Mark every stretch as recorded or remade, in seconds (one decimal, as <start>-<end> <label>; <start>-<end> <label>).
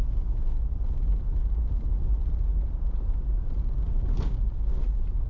0.0-5.3 recorded